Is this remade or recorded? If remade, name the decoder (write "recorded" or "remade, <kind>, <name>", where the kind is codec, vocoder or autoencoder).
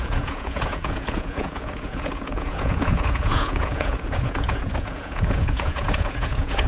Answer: remade, vocoder, Vocos